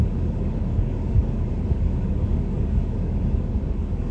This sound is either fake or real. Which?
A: fake